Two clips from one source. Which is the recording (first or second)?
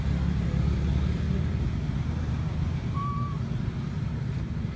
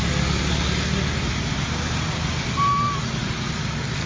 second